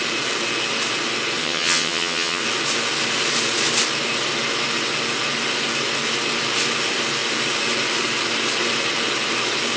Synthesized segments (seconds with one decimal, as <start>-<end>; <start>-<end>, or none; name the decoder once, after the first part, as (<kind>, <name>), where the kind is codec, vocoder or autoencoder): 1.4-2.4 (vocoder, HiFi-GAN)